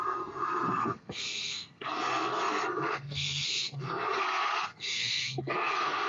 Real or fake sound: fake